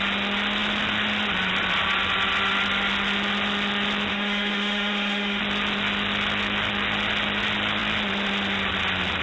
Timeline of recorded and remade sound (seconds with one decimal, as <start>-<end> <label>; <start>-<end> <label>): 0.0-4.1 recorded; 4.1-5.4 remade; 5.4-9.2 recorded